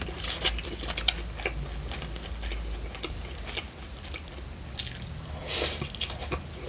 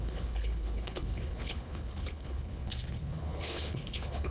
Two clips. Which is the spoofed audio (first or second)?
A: second